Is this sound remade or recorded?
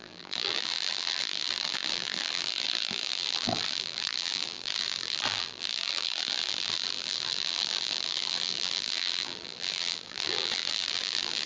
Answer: remade